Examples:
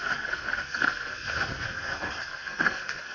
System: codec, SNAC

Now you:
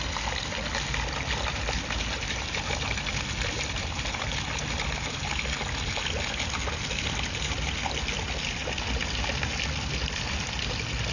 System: none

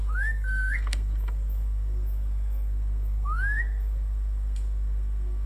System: codec, SNAC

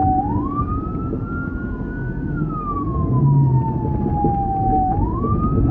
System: none